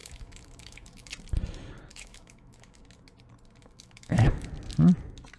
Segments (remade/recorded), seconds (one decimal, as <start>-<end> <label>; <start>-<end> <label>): 0.0-1.1 remade; 1.1-1.9 recorded; 1.9-2.8 remade; 2.8-3.6 recorded; 3.6-4.5 remade; 4.5-5.4 recorded